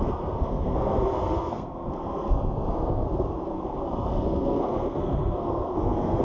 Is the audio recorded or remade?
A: remade